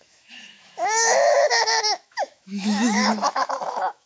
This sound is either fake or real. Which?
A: fake